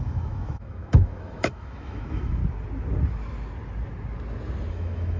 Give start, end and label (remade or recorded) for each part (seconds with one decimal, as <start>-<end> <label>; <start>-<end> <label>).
0.0-2.4 remade; 2.4-4.7 recorded; 4.7-5.2 remade